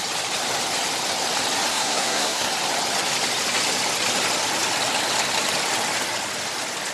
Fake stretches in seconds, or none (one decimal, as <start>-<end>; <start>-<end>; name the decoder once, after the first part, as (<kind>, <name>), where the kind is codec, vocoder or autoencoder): 1.7-2.5 (codec, SNAC)